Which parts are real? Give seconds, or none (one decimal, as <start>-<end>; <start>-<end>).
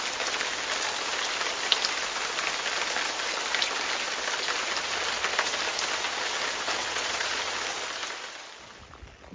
0.0-6.8; 7.4-9.3